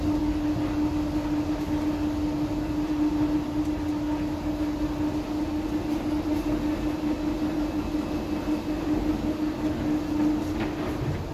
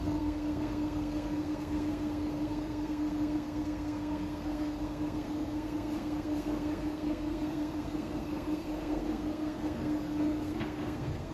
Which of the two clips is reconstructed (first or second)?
second